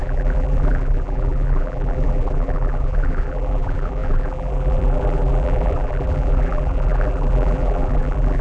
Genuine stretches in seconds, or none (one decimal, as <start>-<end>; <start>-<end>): none